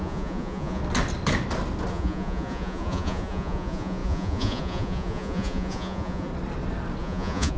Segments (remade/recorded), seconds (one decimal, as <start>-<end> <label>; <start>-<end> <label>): 0.0-0.8 remade; 0.8-1.9 recorded; 1.9-6.3 remade; 6.3-7.0 recorded; 7.0-7.6 remade

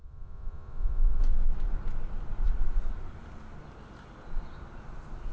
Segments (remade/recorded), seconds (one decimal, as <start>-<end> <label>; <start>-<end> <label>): 0.0-5.3 recorded

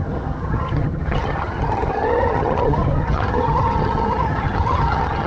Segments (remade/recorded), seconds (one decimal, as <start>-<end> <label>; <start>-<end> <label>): 0.0-5.3 remade

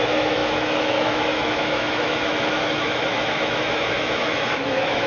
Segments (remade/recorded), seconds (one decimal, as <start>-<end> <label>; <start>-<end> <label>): 0.0-5.1 remade

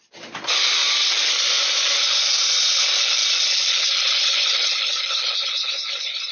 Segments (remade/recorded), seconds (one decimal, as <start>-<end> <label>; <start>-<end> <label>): 0.0-6.3 recorded

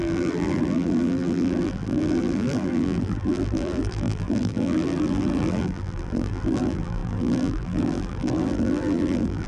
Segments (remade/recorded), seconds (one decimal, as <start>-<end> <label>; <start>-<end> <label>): 0.0-9.5 remade